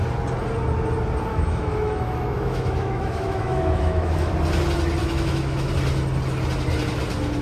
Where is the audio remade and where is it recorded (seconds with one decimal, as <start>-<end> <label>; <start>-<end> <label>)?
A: 0.0-1.3 recorded; 1.3-4.3 remade; 4.3-5.0 recorded; 5.0-5.7 remade; 5.7-7.4 recorded